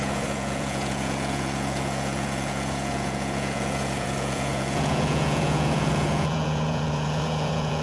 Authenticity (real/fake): fake